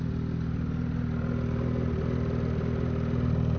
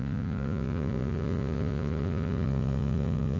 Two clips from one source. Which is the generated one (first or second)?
second